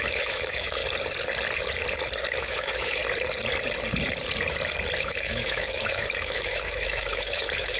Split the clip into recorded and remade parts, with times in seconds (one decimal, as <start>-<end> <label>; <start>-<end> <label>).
0.0-0.8 remade; 0.8-2.3 recorded; 2.3-3.0 remade; 3.0-5.0 recorded; 5.0-7.8 remade